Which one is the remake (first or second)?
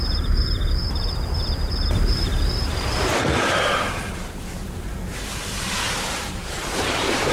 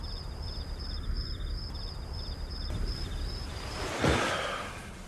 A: first